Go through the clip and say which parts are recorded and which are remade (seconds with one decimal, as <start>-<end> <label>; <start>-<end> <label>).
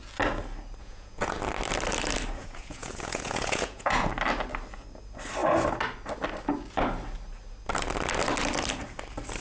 0.0-0.8 recorded; 0.8-1.4 remade; 1.4-2.4 recorded; 2.4-4.1 remade; 4.1-9.4 recorded